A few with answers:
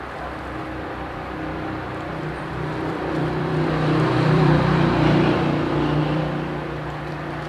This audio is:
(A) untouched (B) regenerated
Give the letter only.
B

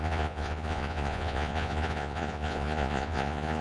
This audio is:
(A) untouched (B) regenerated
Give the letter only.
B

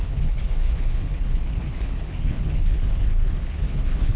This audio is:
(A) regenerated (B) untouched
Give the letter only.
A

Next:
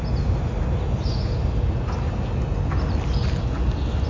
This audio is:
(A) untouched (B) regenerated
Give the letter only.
A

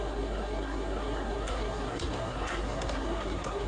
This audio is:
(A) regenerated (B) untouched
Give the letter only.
A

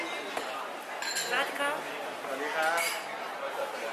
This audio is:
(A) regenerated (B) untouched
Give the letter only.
B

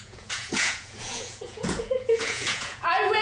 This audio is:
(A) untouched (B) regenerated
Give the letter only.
B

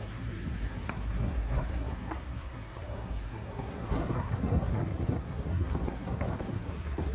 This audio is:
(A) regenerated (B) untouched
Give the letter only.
A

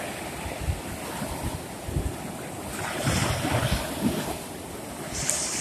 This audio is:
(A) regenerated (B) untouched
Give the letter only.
B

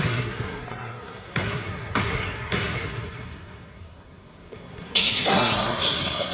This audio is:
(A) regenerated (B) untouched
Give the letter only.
A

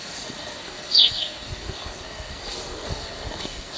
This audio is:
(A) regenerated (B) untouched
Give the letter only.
A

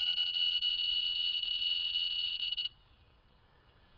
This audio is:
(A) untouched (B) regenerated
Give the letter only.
B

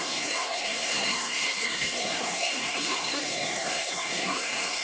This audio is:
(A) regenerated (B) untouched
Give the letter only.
A